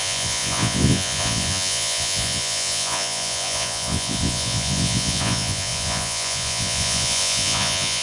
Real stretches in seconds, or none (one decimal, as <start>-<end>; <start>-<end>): none

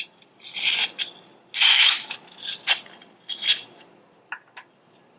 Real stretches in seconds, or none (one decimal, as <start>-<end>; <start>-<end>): 0.0-1.7; 2.4-5.2

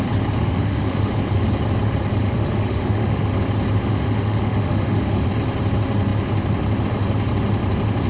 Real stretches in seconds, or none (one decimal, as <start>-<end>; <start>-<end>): 0.0-0.4; 1.1-2.2; 3.3-3.8; 5.3-8.1

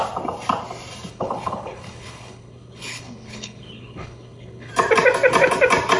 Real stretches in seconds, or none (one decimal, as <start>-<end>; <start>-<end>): 0.0-1.1; 4.7-6.0

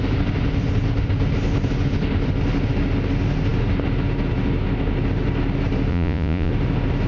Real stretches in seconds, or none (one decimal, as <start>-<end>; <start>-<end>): 0.0-5.9; 6.5-7.1

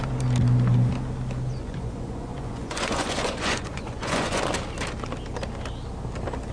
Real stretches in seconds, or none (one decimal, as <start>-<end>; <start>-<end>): 0.0-1.6; 4.4-6.5

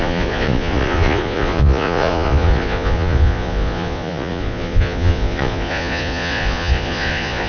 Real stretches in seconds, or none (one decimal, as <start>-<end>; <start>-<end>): none